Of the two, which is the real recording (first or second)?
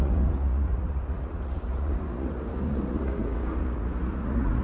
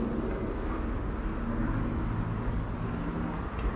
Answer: second